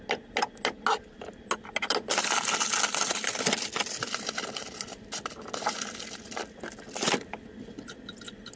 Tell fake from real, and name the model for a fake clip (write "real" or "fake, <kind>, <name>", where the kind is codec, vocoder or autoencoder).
real